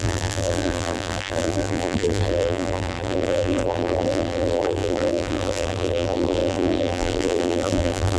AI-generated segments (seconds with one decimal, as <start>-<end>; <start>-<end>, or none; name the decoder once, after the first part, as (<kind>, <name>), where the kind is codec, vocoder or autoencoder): 0.0-8.2 (vocoder, BigVGAN v2)

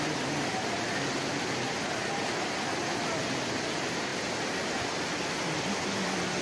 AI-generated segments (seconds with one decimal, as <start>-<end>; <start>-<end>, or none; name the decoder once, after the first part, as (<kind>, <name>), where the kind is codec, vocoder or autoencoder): none

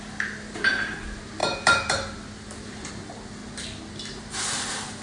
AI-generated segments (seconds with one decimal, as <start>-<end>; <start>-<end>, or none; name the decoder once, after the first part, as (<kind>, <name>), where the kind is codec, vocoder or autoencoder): none

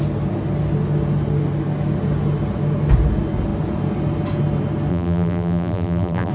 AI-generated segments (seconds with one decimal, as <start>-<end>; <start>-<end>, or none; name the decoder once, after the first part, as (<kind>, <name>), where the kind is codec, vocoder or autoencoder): 4.9-6.3 (vocoder, BigVGAN v2)

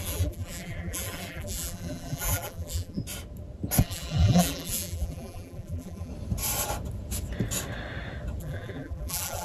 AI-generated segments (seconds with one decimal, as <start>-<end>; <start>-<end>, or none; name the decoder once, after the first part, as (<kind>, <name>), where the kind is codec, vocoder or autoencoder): 0.0-3.0 (vocoder, BigVGAN v2); 3.8-6.1; 8.4-9.4